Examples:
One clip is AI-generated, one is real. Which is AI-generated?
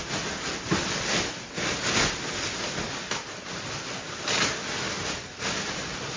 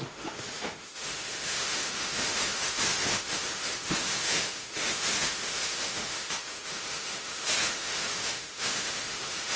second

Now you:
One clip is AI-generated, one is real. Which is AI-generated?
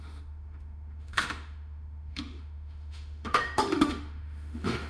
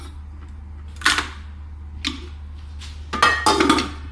first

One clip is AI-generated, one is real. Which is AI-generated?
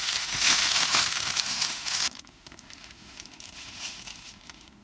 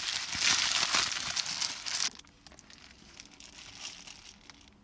first